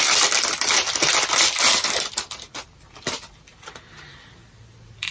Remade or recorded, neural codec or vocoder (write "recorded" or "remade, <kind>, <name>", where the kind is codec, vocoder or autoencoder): recorded